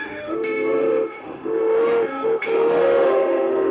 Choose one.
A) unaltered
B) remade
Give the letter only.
B